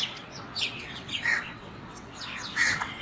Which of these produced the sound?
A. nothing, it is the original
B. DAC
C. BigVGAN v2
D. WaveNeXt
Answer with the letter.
D